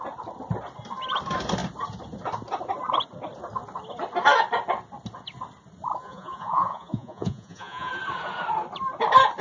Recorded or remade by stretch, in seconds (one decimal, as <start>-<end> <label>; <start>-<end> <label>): 0.0-6.0 recorded; 6.0-7.9 remade; 7.9-9.4 recorded